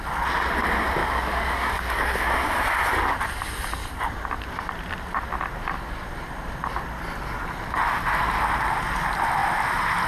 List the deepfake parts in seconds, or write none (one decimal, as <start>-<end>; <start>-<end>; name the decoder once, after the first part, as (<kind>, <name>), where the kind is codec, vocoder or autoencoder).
1.0-2.1 (codec, DAC)